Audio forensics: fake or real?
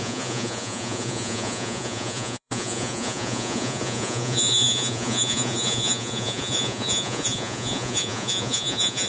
fake